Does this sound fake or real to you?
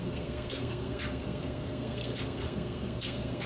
fake